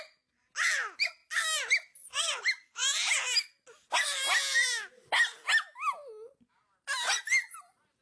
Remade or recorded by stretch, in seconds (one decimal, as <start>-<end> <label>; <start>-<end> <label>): 0.0-8.0 recorded